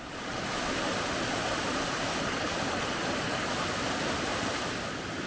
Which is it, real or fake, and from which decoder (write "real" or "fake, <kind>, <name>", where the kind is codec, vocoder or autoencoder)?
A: real